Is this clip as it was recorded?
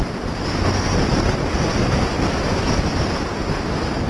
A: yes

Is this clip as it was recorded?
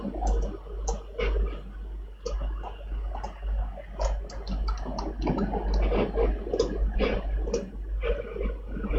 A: yes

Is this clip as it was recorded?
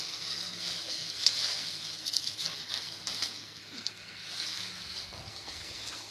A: no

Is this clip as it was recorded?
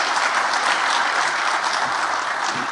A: yes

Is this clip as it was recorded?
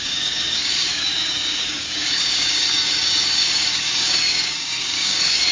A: no